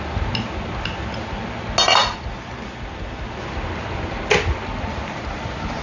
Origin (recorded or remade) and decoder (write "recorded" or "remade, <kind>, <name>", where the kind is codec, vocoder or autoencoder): recorded